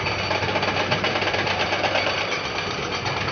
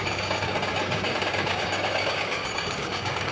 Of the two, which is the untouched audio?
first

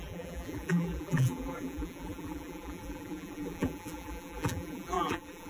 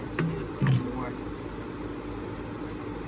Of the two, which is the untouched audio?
second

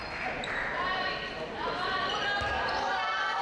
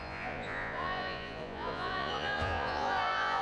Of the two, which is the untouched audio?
first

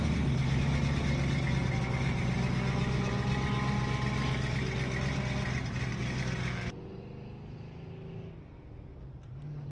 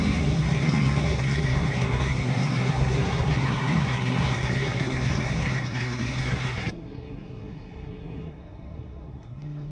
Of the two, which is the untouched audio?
first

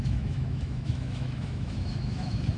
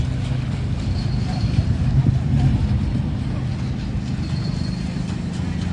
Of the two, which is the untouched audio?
second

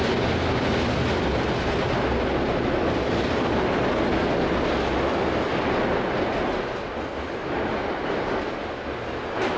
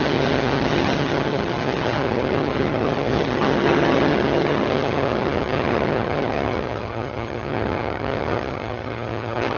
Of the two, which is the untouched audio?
first